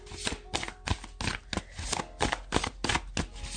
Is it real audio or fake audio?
real